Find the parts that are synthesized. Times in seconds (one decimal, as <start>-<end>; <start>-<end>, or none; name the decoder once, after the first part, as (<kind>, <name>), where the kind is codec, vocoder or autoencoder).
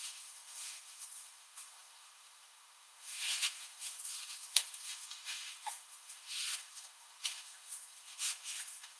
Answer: 0.0-9.0 (autoencoder, DAC-VAE)